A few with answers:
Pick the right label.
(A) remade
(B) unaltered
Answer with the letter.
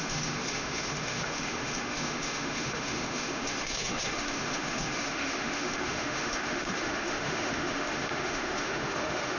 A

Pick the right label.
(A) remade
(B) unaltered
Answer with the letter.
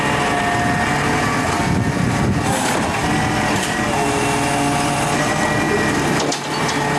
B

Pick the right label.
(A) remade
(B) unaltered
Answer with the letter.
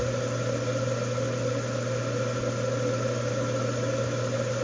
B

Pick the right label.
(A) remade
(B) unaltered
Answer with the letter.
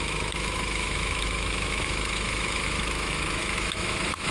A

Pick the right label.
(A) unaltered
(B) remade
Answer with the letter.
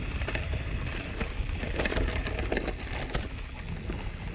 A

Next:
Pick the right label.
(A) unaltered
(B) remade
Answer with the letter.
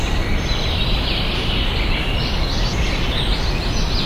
A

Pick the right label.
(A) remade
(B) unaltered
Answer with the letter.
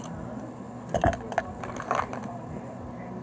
B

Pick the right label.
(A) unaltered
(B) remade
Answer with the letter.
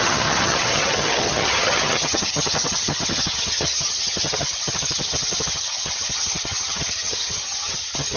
B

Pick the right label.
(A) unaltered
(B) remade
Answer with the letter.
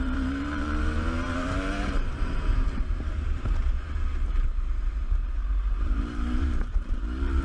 B